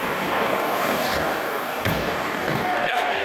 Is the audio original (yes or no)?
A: no